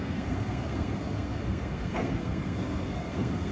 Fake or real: fake